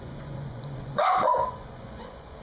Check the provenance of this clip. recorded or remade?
remade